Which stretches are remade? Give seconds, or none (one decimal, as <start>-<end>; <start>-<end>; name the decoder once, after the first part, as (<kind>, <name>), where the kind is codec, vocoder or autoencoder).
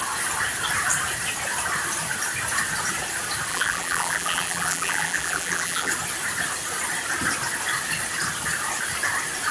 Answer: 3.5-5.9 (vocoder, BigVGAN v2)